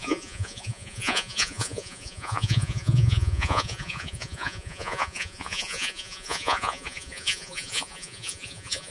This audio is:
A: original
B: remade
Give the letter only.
B